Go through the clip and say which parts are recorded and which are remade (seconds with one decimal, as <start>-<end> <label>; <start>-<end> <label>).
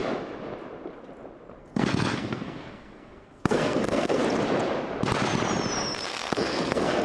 0.0-1.6 recorded; 1.6-4.2 remade; 4.2-6.1 recorded; 6.1-7.0 remade